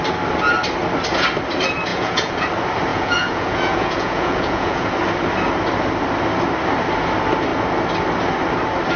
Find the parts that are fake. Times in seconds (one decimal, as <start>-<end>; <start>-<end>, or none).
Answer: 1.9-2.4; 2.9-4.9